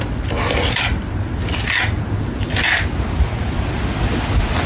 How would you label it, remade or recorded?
recorded